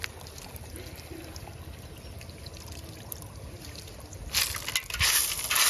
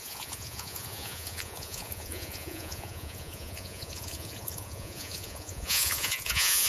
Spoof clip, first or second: second